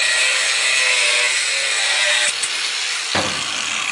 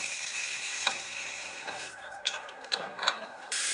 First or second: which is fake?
second